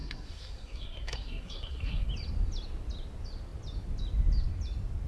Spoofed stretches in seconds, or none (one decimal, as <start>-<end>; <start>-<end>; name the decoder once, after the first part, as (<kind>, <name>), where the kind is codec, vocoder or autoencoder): 0.0-2.1 (codec, SNAC)